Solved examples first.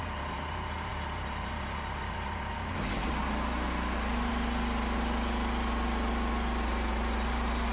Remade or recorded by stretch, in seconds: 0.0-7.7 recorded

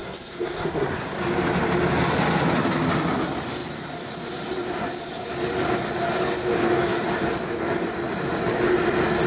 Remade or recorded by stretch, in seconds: 0.0-1.2 remade; 1.2-9.3 recorded

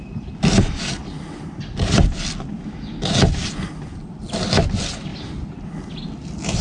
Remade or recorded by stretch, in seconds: 0.0-6.6 recorded

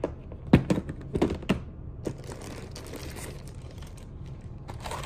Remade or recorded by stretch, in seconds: 0.0-3.0 recorded; 3.0-5.1 remade

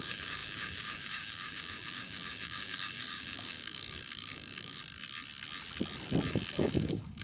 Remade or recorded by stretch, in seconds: 0.0-4.8 remade; 4.8-6.3 recorded; 6.3-7.2 remade

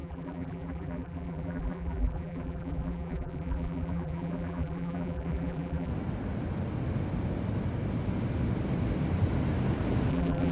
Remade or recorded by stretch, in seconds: 0.0-5.9 remade; 5.9-10.1 recorded; 10.1-10.5 remade